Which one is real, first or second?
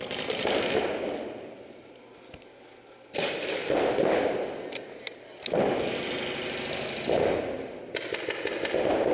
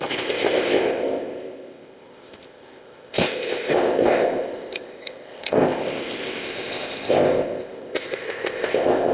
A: first